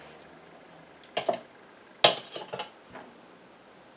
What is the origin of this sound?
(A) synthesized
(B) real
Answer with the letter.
B